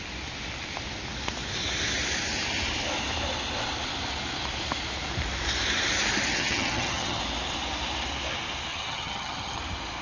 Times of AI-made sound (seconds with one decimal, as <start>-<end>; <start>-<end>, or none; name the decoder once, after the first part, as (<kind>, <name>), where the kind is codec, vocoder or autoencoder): 6.3-7.2 (vocoder, HiFi-GAN); 8.7-9.6